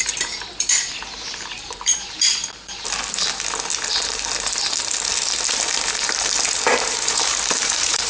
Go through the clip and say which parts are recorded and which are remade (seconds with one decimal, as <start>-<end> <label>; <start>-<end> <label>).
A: 0.0-2.4 remade; 2.4-6.7 recorded; 6.7-8.1 remade